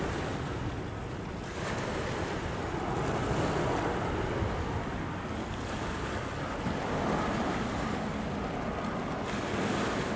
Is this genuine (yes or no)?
yes